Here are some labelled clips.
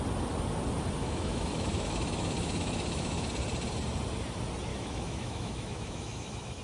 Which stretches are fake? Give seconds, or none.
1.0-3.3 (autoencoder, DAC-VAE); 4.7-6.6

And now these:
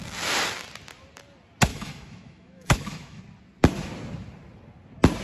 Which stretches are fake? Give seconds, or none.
1.7-3.2 (autoencoder, DAC-VAE)